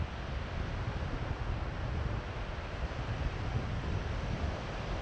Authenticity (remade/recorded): recorded